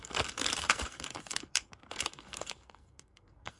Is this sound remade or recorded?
remade